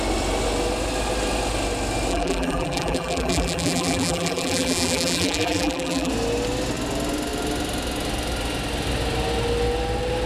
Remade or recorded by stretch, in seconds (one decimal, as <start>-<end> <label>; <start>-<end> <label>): 0.0-2.1 recorded; 2.1-6.1 remade; 6.1-10.3 recorded